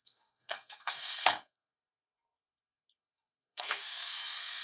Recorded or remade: remade